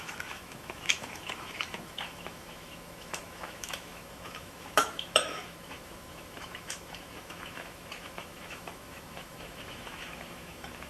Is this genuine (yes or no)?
no